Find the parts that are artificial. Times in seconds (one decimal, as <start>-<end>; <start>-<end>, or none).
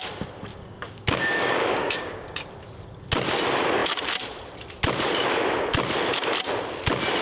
0.5-2.5